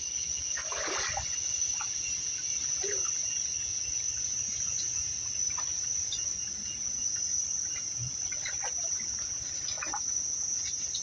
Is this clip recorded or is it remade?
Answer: recorded